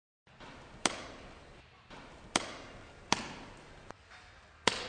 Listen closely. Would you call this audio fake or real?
real